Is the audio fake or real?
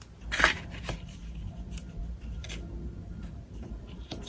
fake